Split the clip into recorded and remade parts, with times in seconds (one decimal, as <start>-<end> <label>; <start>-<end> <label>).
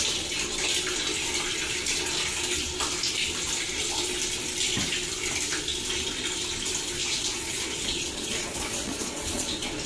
0.0-7.0 recorded; 7.0-9.5 remade; 9.5-9.9 recorded